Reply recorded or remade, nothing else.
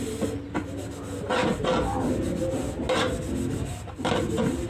recorded